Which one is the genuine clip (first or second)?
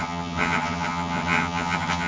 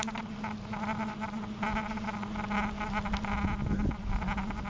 second